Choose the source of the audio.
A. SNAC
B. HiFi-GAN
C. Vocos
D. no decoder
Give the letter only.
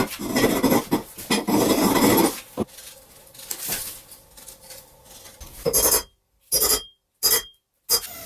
D